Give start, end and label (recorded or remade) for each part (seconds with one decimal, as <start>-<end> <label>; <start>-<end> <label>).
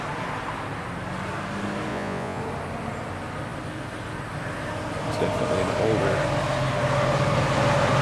0.0-1.9 recorded; 1.9-2.4 remade; 2.4-8.0 recorded